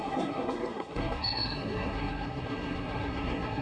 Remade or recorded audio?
remade